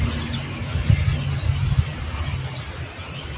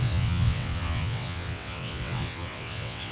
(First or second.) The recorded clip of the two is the first